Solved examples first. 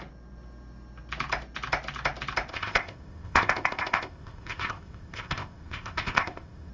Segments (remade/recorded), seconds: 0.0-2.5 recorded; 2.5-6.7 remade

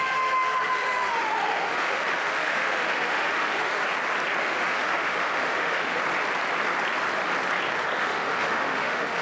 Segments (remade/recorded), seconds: 0.0-3.7 remade; 3.7-4.4 recorded; 4.4-6.0 remade; 6.0-8.0 recorded; 8.0-9.2 remade

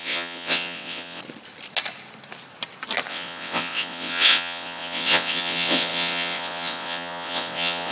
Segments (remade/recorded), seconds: 0.0-1.2 remade; 1.2-3.1 recorded; 3.1-7.9 remade

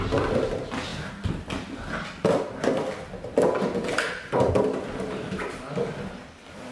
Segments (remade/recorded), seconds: 0.0-6.7 recorded

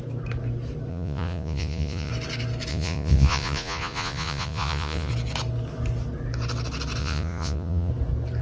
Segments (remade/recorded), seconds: 0.0-0.9 recorded; 0.9-2.1 remade; 2.1-2.7 recorded; 2.7-5.1 remade; 5.1-7.0 recorded; 7.0-7.9 remade; 7.9-8.4 recorded

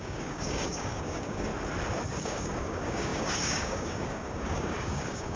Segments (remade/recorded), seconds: 0.0-1.5 remade; 1.5-2.2 recorded; 2.2-5.4 remade